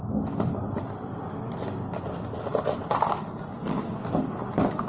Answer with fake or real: real